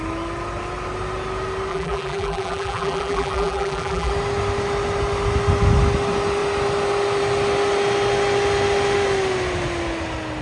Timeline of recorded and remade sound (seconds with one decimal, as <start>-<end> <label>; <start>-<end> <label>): 0.0-1.7 recorded; 1.7-4.1 remade; 4.1-10.4 recorded